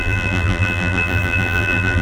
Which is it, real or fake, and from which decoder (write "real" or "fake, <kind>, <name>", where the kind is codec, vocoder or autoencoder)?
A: fake, vocoder, BigVGAN v2